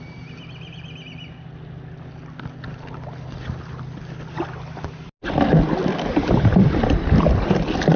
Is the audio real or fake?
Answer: real